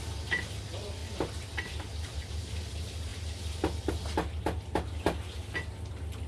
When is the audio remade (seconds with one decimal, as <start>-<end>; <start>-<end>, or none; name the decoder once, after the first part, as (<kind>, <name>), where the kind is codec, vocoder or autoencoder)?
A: 1.0-2.2 (vocoder, BigVGAN v2)